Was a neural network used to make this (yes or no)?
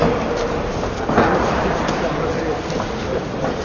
no